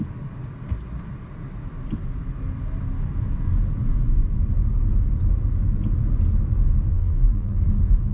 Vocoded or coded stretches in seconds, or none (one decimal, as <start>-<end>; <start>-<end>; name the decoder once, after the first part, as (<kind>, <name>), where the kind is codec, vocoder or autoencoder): 6.9-7.6 (vocoder, BigVGAN v2)